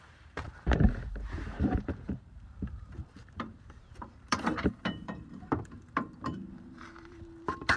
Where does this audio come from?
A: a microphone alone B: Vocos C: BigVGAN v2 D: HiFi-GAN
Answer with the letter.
C